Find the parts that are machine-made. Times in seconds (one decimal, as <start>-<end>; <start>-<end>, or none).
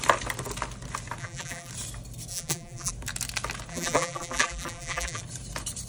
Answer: 1.2-1.7; 2.3-2.9; 3.7-5.2